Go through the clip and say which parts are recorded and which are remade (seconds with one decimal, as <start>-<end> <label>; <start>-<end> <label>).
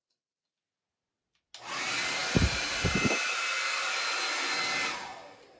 0.0-5.6 recorded